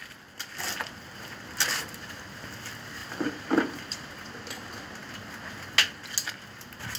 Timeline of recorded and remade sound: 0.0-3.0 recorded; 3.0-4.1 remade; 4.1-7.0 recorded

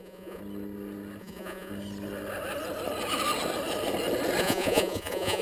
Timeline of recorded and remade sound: 0.0-0.4 remade; 0.4-1.2 recorded; 1.2-1.7 remade; 1.7-4.4 recorded; 4.4-5.4 remade

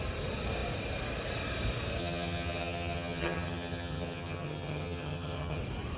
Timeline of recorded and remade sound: 0.0-2.0 recorded; 2.0-5.6 remade; 5.6-6.0 recorded

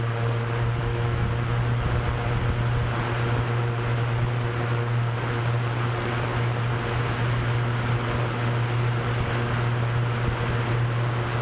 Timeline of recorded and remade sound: 0.0-0.8 recorded; 0.8-1.3 remade; 1.3-11.4 recorded

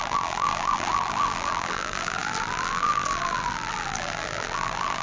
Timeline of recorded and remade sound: 0.0-5.0 remade